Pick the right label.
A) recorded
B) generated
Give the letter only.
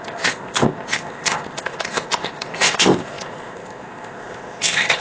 B